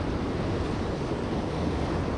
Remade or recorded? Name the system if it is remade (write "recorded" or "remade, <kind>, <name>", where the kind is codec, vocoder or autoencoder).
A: recorded